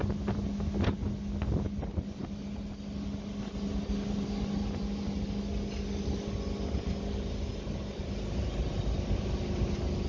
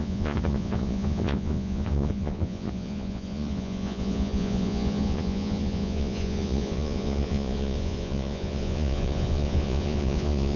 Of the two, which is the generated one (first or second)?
second